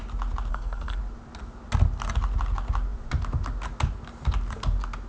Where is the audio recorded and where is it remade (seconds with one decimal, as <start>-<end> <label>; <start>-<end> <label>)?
0.0-0.5 recorded; 0.5-1.0 remade; 1.0-5.1 recorded